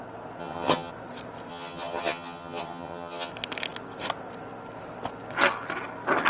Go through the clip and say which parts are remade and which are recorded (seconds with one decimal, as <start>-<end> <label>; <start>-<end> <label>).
0.0-0.4 recorded; 0.4-0.9 remade; 0.9-1.5 recorded; 1.5-3.3 remade; 3.3-6.3 recorded